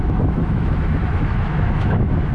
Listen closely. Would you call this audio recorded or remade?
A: remade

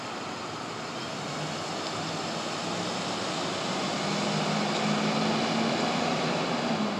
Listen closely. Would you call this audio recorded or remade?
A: recorded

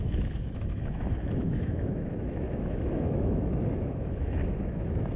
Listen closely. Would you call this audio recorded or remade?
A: remade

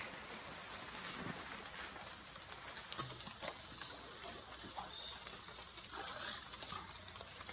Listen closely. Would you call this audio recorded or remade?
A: recorded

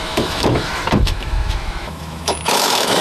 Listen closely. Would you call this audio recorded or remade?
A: remade